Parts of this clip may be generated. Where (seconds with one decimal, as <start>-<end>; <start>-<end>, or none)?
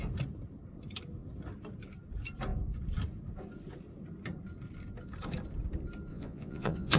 6.1-7.0